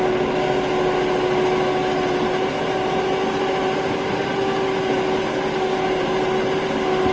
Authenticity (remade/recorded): recorded